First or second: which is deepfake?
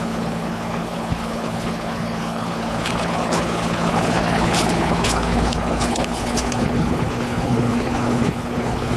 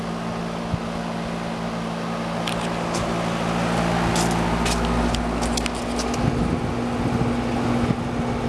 first